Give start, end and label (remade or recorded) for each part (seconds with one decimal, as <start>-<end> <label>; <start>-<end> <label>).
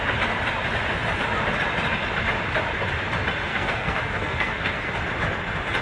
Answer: 0.0-3.5 recorded; 3.5-4.9 remade; 4.9-5.8 recorded